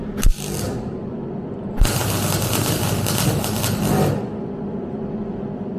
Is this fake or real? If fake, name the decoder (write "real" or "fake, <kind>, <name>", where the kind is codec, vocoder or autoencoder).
real